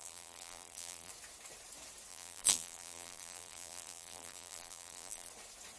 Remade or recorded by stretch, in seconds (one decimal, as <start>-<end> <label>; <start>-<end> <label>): 0.0-1.1 remade; 1.1-2.1 recorded; 2.1-5.3 remade; 5.3-5.8 recorded

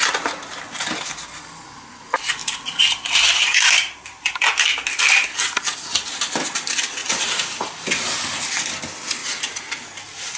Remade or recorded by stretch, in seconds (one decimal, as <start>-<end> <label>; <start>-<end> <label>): 0.0-2.4 recorded; 2.4-4.3 remade; 4.3-7.0 recorded; 7.0-7.8 remade; 7.8-9.2 recorded; 9.2-10.4 remade

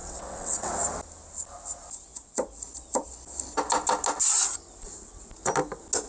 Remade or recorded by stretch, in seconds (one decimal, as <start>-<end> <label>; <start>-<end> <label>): 0.0-0.7 remade; 0.7-6.1 recorded

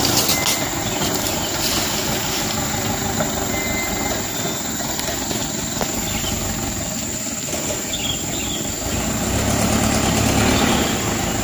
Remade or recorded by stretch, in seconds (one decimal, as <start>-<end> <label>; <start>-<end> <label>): 0.0-11.4 recorded

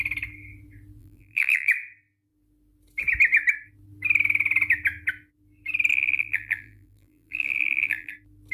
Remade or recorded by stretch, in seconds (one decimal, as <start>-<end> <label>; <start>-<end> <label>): 0.0-1.0 recorded; 1.0-1.7 remade; 1.7-5.9 recorded; 5.9-8.1 remade; 8.1-8.5 recorded

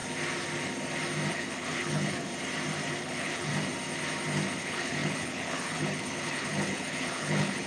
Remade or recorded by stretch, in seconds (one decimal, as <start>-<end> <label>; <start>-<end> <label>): 0.0-1.3 recorded; 1.3-2.3 remade; 2.3-3.0 recorded; 3.0-3.5 remade; 3.5-4.6 recorded; 4.6-7.7 remade

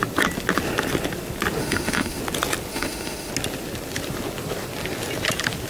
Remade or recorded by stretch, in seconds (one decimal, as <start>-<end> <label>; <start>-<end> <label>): 0.0-1.6 recorded; 1.6-2.2 remade; 2.2-2.7 recorded; 2.7-3.3 remade; 3.3-5.7 recorded